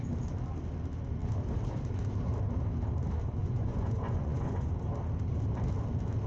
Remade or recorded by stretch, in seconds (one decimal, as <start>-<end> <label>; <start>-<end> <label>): 0.0-3.4 recorded; 3.4-4.7 remade; 4.7-6.3 recorded